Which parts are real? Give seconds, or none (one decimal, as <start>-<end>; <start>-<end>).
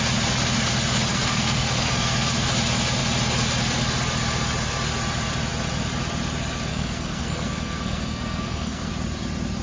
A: 0.0-1.1; 2.5-6.7; 8.9-9.6